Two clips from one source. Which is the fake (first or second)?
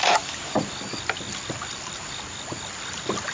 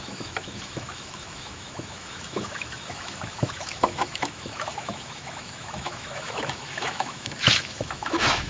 second